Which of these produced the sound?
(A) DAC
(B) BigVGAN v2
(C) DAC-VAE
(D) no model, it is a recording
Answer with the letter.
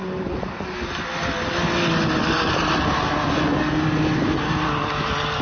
D